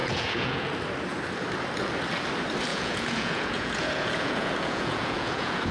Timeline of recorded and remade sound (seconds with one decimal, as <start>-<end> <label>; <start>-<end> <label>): 0.0-0.7 remade; 0.7-2.7 recorded; 2.7-5.7 remade